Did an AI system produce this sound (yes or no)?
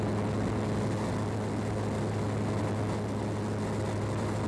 no